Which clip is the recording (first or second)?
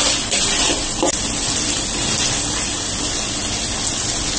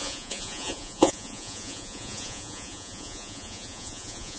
first